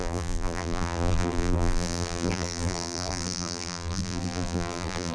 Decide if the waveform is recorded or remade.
remade